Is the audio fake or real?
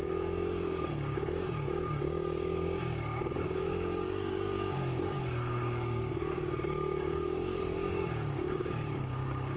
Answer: fake